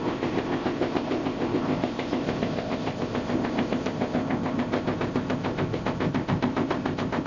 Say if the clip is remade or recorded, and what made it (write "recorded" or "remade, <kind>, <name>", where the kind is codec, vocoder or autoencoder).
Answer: remade, codec, ZipCodec